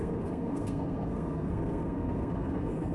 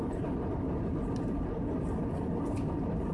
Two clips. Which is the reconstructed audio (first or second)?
first